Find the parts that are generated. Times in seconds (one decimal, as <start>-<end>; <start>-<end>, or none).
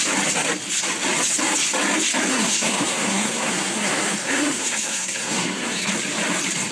2.3-5.9